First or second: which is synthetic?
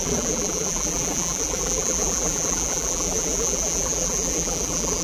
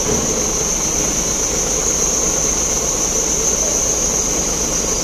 first